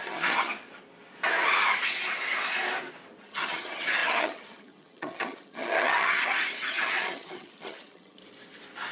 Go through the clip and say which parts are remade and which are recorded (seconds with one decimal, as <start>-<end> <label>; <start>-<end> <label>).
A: 0.0-0.5 remade; 0.5-3.2 recorded; 3.2-8.2 remade; 8.2-8.9 recorded